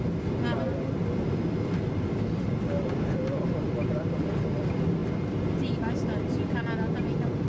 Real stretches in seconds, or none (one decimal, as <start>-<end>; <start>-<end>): 0.0-7.5